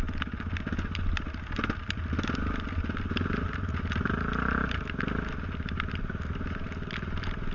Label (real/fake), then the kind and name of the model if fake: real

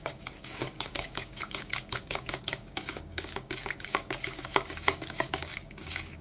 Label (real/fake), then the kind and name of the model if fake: fake, codec, DAC